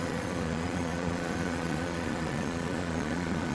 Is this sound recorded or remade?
remade